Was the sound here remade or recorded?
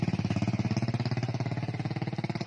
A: recorded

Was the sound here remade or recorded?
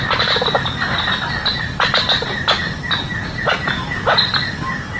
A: recorded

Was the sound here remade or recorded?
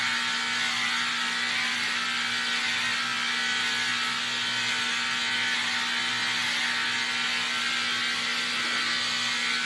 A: recorded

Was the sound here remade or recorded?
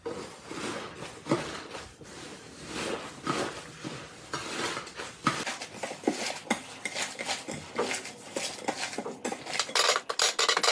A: recorded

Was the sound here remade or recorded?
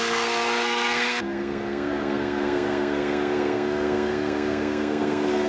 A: remade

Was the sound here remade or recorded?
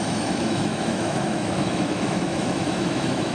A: remade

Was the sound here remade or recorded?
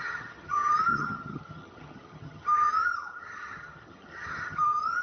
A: remade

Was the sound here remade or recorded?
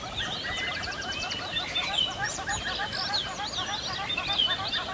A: recorded